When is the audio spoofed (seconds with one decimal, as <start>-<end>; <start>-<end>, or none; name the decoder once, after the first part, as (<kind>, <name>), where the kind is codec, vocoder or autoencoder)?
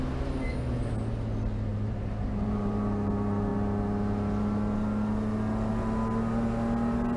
1.7-3.1 (vocoder, BigVGAN v2)